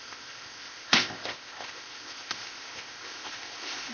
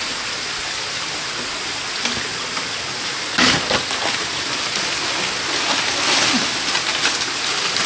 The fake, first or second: first